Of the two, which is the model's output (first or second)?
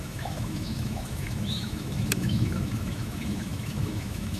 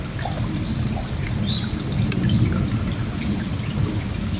first